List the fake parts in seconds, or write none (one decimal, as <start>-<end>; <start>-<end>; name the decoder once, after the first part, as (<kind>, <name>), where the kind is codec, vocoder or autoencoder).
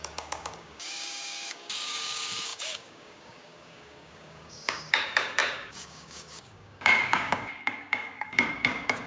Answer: 0.0-9.1 (codec, DAC)